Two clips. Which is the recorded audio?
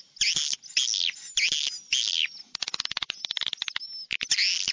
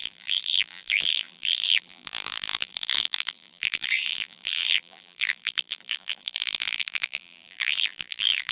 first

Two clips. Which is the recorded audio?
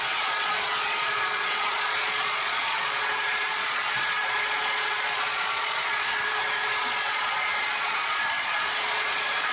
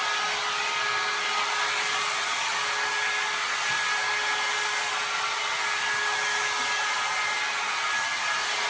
second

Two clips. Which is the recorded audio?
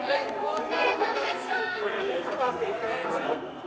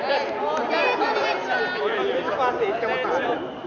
second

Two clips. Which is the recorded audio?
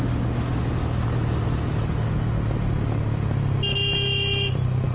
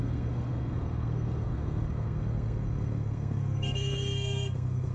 first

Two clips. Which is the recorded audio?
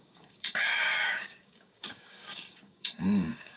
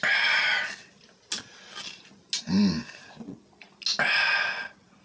second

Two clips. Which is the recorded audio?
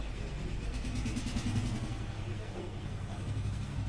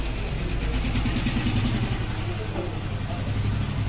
second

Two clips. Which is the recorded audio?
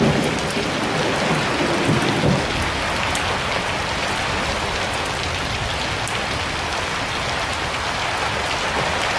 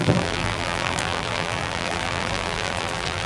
first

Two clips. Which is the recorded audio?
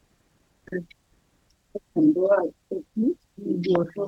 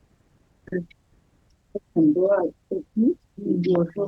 second